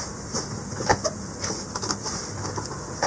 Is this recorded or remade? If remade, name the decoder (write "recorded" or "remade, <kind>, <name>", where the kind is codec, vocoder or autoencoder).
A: recorded